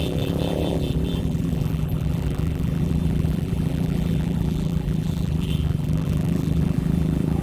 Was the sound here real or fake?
fake